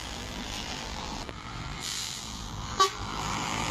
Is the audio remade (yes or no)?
yes